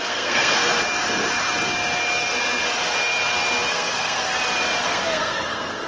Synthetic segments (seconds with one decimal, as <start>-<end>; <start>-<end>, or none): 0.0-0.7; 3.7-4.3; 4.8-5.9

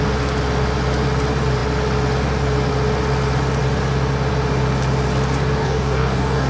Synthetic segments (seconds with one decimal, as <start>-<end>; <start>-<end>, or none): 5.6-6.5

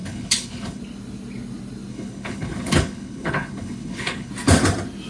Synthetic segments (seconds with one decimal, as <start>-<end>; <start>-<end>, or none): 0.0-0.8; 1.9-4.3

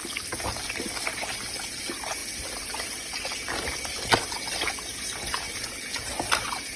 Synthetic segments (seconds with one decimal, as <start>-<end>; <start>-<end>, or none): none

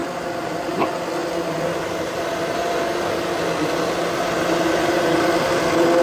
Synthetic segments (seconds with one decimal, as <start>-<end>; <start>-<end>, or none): none

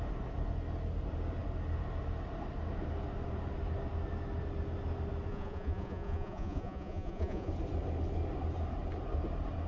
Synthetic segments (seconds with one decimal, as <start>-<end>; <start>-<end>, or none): 5.3-7.5